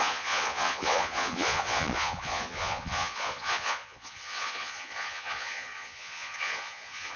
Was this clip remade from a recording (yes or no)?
yes